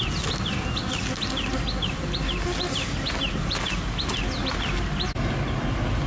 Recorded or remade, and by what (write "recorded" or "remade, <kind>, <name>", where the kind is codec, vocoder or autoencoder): recorded